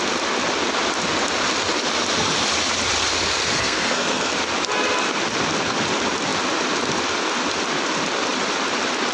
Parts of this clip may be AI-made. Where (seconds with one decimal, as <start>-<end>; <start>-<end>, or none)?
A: 3.5-4.3

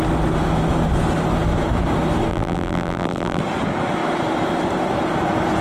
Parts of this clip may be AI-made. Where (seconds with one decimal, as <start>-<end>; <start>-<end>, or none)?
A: 2.3-3.4

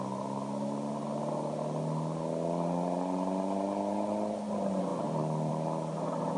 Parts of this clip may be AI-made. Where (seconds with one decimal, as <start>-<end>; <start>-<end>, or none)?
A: none

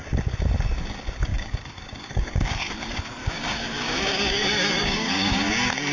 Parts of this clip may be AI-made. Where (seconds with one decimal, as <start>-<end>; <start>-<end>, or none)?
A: 1.3-2.7; 3.2-5.5

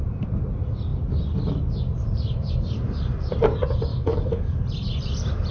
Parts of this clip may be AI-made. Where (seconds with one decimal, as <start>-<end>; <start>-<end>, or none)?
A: 3.9-4.6

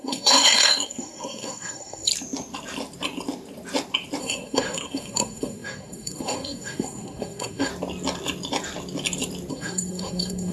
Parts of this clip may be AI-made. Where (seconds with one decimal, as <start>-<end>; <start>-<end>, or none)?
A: 0.0-2.1; 4.2-7.7; 9.5-10.5

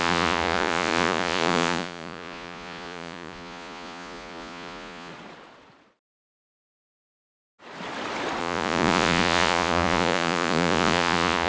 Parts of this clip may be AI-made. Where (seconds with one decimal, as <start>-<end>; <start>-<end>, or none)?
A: 0.0-5.1; 8.4-11.5

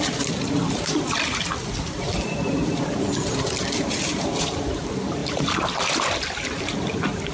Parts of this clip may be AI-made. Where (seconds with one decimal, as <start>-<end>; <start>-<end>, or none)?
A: 0.0-7.3